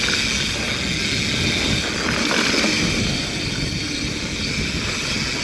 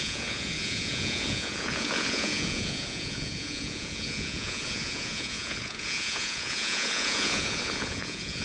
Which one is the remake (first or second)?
second